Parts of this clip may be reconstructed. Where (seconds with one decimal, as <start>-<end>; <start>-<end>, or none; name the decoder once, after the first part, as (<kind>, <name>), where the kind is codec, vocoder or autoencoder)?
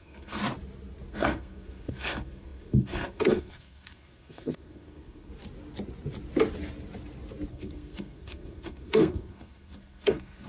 0.0-0.4 (codec, SNAC); 1.1-5.3; 7.5-10.5